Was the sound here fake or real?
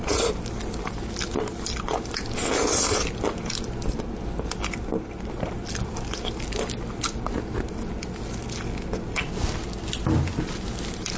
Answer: real